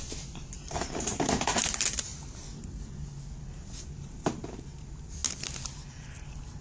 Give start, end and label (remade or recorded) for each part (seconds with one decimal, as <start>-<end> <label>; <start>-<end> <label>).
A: 0.0-2.1 remade; 2.1-3.8 recorded; 3.8-5.2 remade; 5.2-6.6 recorded